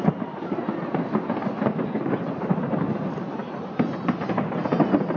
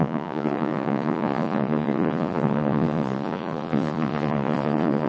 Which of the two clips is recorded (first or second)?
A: first